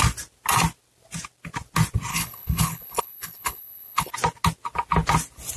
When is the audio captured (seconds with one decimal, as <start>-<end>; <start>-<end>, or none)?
0.0-2.1; 4.1-5.6